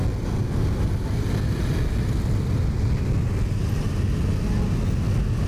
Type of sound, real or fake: real